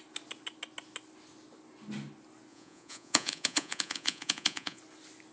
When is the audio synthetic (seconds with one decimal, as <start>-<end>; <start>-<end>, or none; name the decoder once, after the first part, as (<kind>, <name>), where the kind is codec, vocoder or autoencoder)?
2.5-4.8 (vocoder, Vocos)